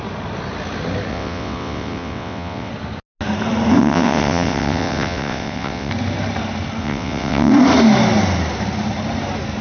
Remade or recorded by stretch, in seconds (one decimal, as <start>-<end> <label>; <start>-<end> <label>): 0.0-1.1 recorded; 1.1-2.7 remade; 2.7-3.8 recorded; 3.8-5.9 remade; 5.9-6.8 recorded; 6.8-7.5 remade; 7.5-9.6 recorded